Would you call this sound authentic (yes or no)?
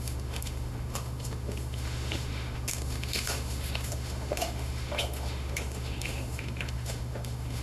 no